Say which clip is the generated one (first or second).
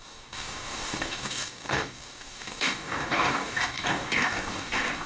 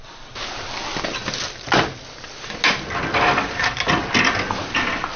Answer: first